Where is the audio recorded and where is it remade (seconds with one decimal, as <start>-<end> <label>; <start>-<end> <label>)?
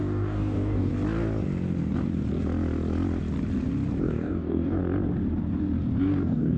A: 0.0-0.9 remade; 0.9-4.0 recorded; 4.0-4.8 remade; 4.8-6.0 recorded; 6.0-6.6 remade